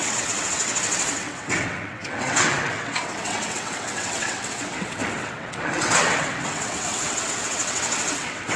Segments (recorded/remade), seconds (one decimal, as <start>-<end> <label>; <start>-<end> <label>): 0.0-8.6 remade